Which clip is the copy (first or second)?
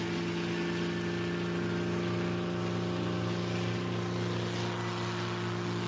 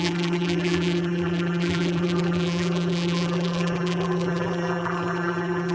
second